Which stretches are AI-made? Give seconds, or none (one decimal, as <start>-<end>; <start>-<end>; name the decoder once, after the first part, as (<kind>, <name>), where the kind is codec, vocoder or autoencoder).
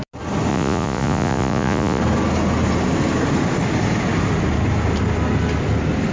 0.5-2.0 (vocoder, Vocos)